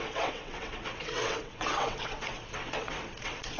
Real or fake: fake